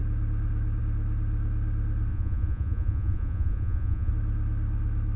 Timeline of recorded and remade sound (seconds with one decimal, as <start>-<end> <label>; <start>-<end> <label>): 0.0-2.1 recorded; 2.1-4.1 remade; 4.1-5.2 recorded